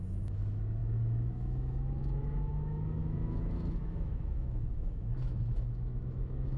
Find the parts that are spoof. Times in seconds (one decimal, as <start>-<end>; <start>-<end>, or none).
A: 0.0-6.6